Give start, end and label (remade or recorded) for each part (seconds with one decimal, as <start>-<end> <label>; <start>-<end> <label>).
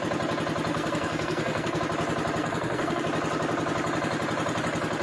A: 0.0-0.7 recorded; 0.7-1.8 remade; 1.8-2.4 recorded; 2.4-3.0 remade; 3.0-5.0 recorded